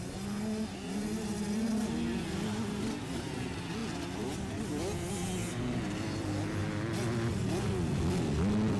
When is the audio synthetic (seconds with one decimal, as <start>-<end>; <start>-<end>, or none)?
none